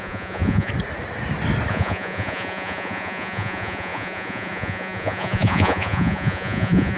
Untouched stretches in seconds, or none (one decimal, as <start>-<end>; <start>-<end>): 0.7-1.7